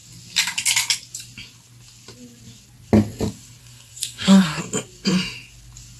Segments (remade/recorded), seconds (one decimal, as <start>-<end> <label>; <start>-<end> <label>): 0.0-3.6 recorded; 3.6-4.6 remade; 4.6-6.0 recorded